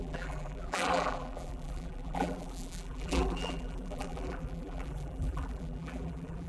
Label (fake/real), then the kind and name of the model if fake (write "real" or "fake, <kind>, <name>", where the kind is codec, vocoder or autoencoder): fake, vocoder, BigVGAN v2